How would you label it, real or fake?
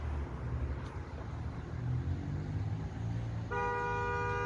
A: real